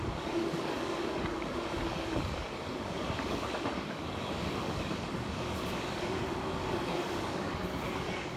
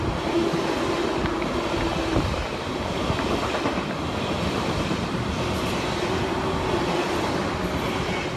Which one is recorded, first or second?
second